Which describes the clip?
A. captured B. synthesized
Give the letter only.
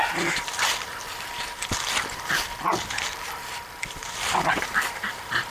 B